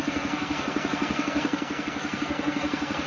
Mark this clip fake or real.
fake